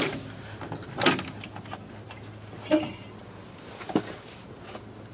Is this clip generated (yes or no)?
no